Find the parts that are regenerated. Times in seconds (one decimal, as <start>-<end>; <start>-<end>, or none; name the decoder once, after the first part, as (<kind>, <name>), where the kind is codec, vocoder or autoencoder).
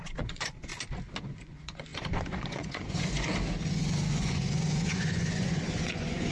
0.0-0.7 (vocoder, Vocos); 1.2-3.3; 4.1-6.3